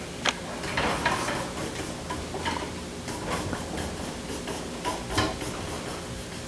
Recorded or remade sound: recorded